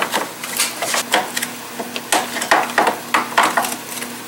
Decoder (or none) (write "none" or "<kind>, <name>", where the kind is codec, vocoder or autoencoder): none